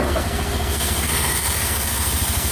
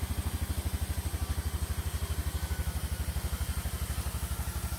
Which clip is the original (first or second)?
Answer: second